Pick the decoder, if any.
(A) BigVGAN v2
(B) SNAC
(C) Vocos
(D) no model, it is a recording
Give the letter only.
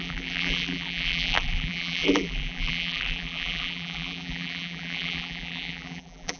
A